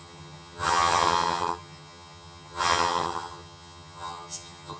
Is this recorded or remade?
remade